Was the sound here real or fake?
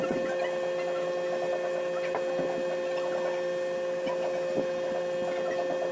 real